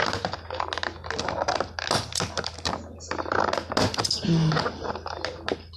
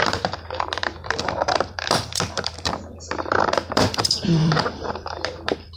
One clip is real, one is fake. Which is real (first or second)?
first